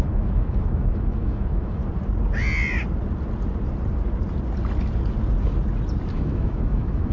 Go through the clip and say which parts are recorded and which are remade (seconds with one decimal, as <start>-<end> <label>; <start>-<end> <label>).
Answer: 0.0-1.8 remade; 1.8-6.1 recorded; 6.1-7.1 remade